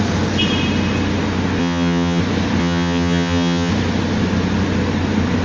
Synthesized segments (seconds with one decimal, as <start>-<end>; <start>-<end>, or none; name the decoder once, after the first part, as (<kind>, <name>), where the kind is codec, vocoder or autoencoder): 1.6-2.2 (vocoder, HiFi-GAN); 2.6-3.7